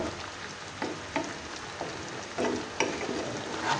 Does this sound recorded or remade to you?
recorded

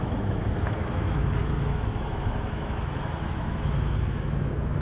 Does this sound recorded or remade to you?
remade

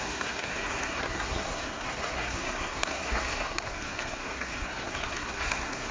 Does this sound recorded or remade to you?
remade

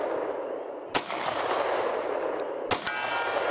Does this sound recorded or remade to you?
recorded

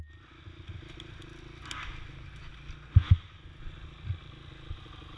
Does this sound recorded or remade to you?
recorded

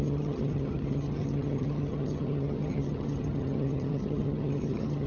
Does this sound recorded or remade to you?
remade